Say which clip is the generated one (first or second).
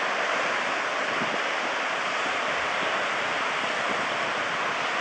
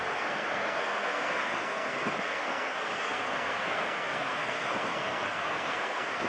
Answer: second